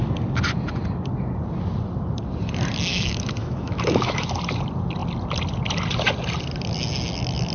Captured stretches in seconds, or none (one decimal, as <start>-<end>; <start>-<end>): 0.0-2.9; 4.3-7.5